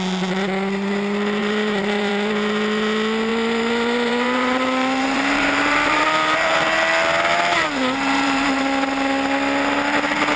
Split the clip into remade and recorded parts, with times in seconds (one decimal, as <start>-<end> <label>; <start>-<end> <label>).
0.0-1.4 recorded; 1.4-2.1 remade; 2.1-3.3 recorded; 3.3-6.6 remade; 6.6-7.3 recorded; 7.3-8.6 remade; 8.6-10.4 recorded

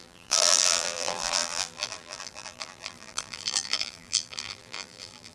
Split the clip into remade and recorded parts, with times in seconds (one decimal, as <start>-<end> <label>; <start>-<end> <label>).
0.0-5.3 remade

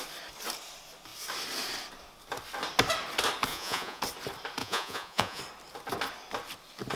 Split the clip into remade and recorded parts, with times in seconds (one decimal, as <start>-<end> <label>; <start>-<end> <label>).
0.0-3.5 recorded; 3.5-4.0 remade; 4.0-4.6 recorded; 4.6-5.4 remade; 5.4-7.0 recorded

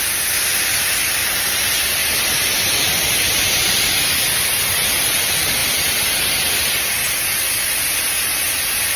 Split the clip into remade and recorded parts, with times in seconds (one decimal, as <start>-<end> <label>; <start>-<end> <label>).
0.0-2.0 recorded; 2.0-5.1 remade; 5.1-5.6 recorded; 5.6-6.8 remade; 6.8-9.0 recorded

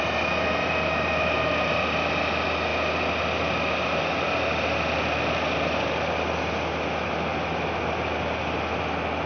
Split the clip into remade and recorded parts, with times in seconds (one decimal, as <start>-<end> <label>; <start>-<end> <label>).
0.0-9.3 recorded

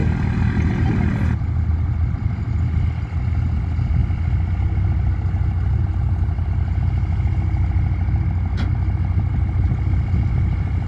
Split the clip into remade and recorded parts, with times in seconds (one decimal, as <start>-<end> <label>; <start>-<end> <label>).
0.0-10.9 recorded